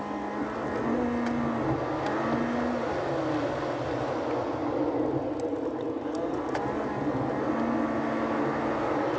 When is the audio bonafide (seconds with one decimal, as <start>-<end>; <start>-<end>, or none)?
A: 0.0-9.2